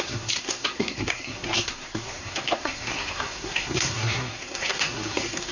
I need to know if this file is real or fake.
fake